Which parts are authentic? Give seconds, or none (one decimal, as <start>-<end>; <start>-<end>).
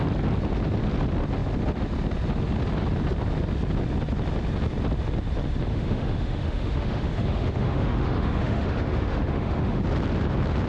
0.0-5.7; 9.8-10.7